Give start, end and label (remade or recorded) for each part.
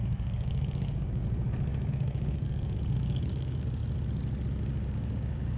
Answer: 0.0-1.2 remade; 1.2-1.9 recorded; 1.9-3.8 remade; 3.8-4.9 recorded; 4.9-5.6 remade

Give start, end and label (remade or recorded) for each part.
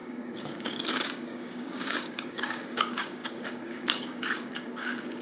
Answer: 0.0-5.2 remade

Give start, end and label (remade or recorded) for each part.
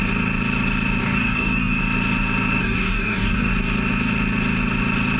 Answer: 0.0-1.0 recorded; 1.0-1.8 remade; 1.8-2.6 recorded; 2.6-3.5 remade; 3.5-5.2 recorded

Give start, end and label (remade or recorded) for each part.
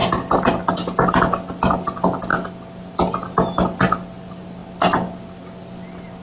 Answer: 0.0-6.2 recorded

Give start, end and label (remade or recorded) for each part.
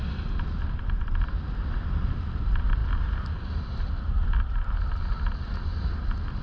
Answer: 0.0-6.4 recorded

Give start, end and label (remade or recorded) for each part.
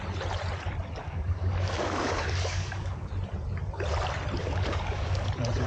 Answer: 0.0-1.0 recorded; 1.0-3.1 remade; 3.1-4.4 recorded; 4.4-5.3 remade; 5.3-5.7 recorded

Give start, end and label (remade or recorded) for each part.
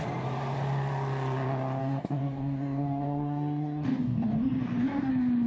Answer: 0.0-1.8 recorded; 1.8-5.1 remade; 5.1-5.5 recorded